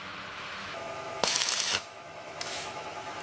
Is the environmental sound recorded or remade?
remade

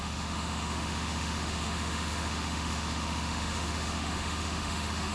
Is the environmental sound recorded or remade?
remade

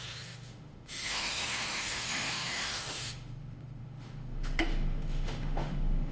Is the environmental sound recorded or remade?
remade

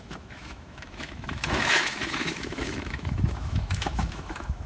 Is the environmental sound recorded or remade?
remade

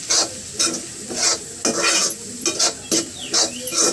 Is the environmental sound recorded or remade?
recorded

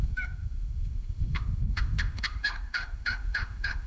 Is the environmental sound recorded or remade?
remade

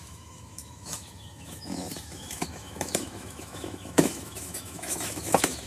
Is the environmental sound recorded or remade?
remade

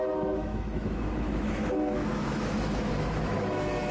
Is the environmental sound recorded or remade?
remade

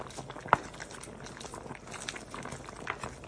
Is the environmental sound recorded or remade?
recorded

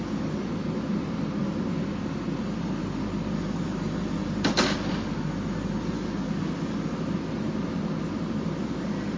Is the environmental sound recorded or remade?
recorded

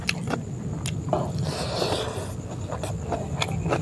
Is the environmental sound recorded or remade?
recorded